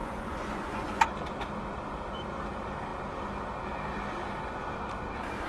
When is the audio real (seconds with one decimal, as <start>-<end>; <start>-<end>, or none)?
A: 1.0-5.5